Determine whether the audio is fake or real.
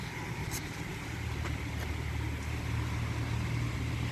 real